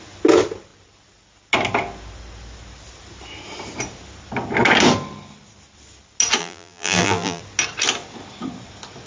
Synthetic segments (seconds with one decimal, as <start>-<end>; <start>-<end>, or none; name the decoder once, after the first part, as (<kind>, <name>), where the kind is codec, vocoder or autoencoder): 6.4-7.4 (vocoder, BigVGAN v2)